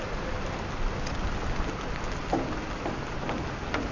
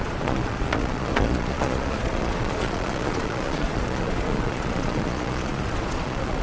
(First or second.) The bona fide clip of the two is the first